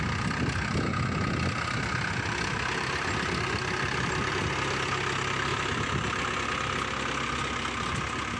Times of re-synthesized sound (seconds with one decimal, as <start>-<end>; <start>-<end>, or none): none